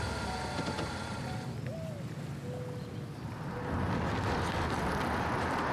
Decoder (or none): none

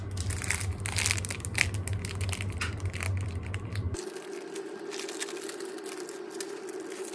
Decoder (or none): none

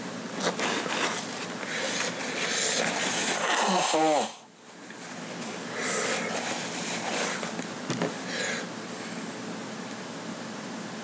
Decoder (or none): none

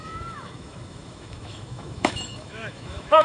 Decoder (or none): autoencoder, DAC-VAE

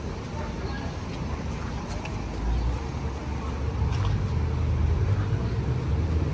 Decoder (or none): none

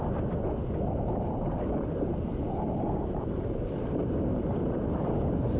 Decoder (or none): none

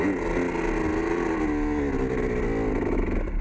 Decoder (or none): none